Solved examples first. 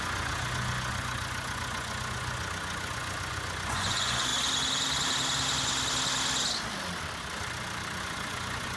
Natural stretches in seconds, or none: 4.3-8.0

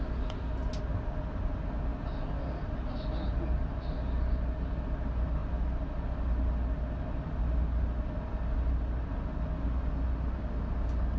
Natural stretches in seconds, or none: 0.0-11.2

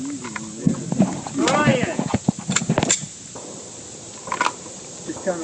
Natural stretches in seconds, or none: 0.0-1.7; 2.3-5.4

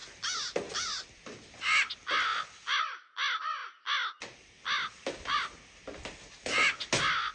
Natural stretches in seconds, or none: 0.0-7.3

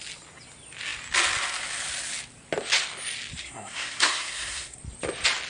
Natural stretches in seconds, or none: 0.0-3.4; 4.8-5.5

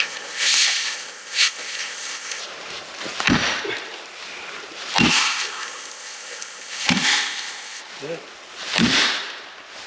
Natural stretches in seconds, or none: 2.4-5.1; 7.8-9.9

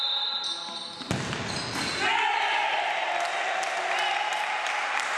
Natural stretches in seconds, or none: 0.0-4.3

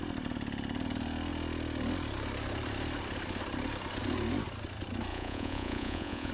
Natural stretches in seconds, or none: 0.0-5.1